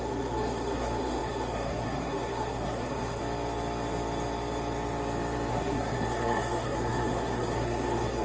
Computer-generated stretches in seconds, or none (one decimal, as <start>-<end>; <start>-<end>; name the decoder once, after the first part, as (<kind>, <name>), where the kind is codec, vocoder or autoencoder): 0.0-3.2 (codec, SNAC); 5.5-8.2